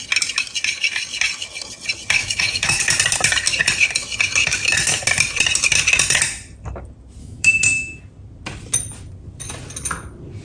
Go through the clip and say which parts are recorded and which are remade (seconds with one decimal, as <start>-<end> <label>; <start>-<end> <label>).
0.0-2.2 recorded; 2.2-2.9 remade; 2.9-4.4 recorded; 4.4-5.0 remade; 5.0-7.2 recorded; 7.2-8.0 remade; 8.0-10.4 recorded